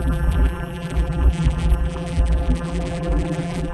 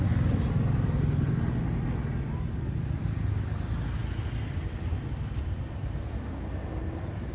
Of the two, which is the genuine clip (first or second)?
second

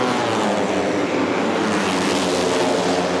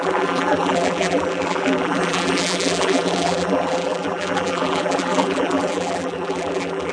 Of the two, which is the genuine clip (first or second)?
first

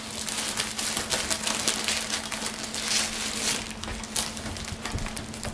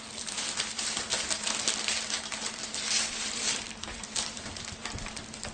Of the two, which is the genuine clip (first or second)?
first